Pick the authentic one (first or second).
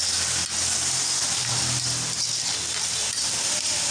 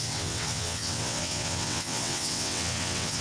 first